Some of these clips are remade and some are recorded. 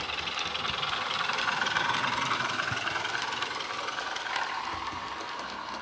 recorded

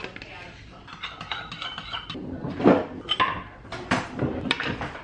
remade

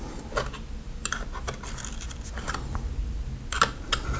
recorded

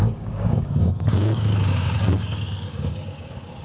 remade